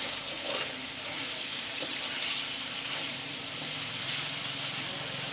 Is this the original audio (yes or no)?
yes